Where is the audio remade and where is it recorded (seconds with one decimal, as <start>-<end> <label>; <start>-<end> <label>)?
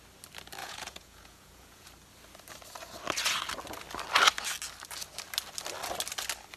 0.0-0.6 recorded; 0.6-1.9 remade; 1.9-6.6 recorded